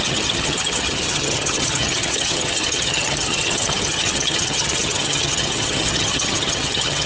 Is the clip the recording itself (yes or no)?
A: no